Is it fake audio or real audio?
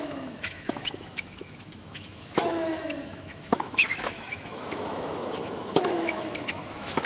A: fake